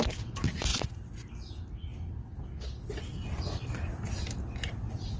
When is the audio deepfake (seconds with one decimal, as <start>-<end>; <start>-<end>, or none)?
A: none